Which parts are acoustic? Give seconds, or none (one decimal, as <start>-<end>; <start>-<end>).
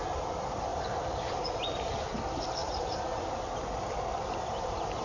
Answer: 0.0-0.7; 1.4-2.6; 3.3-5.0